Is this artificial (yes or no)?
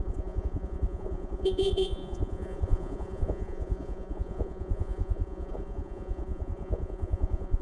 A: yes